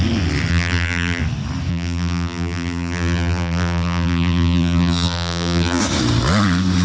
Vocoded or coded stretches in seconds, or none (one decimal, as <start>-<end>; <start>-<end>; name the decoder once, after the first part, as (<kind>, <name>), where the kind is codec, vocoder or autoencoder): 0.5-1.2 (vocoder, BigVGAN v2); 1.7-5.8